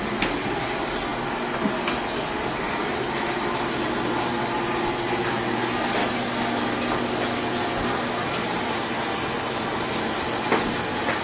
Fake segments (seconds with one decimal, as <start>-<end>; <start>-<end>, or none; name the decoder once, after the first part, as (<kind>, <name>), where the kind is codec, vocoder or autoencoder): none